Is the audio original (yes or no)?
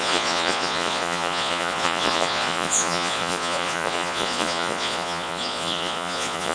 no